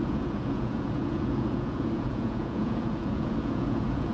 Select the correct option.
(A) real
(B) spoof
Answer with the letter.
B